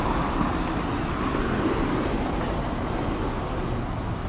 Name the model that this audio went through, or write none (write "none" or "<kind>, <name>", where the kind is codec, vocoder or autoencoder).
none